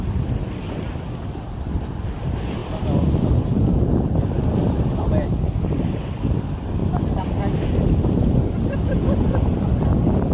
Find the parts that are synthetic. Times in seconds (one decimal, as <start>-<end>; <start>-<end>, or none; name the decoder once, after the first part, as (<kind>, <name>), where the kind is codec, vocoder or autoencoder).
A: 6.8-7.5 (vocoder, BigVGAN v2)